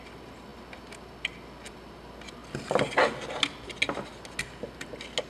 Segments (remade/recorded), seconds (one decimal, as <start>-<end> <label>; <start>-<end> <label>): 0.0-5.3 recorded